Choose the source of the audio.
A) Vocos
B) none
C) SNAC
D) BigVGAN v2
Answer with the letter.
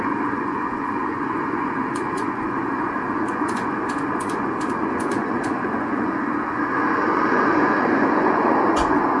A